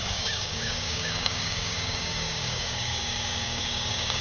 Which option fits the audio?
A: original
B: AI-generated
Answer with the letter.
B